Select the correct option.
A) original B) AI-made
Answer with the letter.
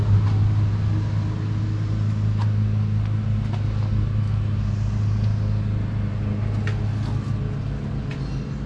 A